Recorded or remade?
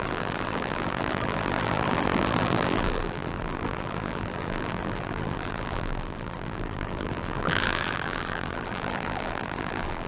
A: remade